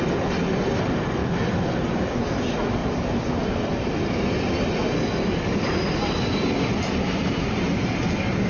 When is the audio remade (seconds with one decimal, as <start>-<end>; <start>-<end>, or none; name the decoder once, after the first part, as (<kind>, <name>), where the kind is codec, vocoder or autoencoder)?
none